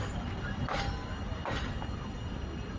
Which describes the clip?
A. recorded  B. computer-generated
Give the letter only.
A